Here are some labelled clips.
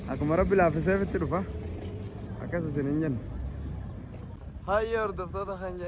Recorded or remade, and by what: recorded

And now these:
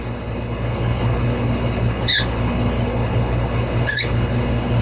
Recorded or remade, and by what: remade, codec, HILCodec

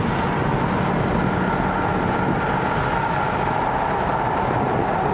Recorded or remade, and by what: recorded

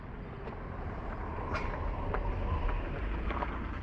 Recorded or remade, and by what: recorded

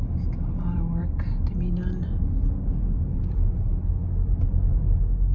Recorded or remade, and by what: recorded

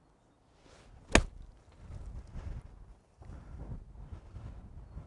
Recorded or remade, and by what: recorded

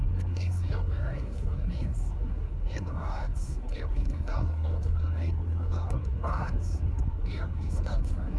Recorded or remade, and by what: remade, codec, SNAC